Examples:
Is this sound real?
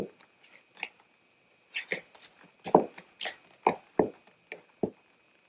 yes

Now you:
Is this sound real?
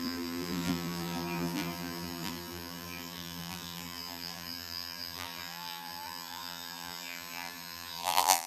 no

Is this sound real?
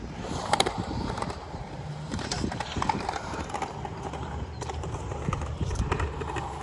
no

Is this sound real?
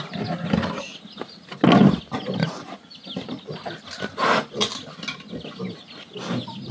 yes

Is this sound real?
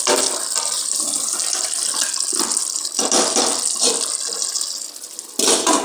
yes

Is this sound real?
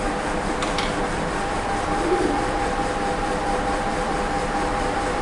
no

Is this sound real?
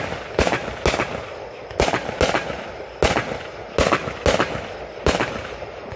yes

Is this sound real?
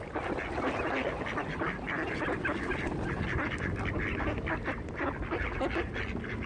yes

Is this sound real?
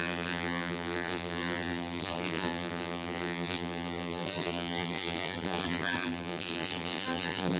no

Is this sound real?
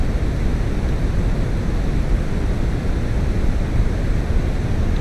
yes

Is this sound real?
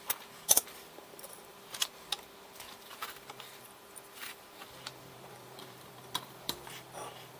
no